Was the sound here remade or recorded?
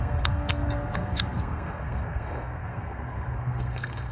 remade